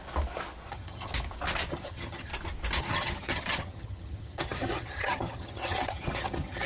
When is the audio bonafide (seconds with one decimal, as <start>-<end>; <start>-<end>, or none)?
0.0-0.7; 1.1-1.7; 2.3-2.8